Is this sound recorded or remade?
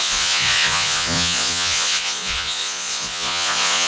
remade